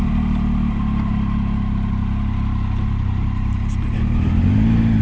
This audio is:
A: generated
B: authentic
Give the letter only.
B